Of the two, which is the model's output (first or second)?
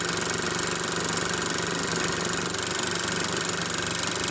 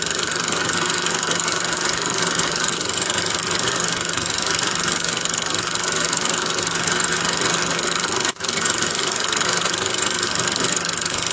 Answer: second